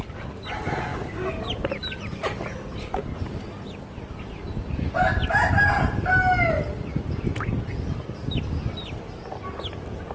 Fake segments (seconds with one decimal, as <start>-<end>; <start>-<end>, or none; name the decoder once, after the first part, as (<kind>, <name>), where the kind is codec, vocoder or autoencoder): none